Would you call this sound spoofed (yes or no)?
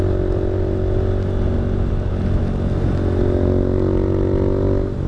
no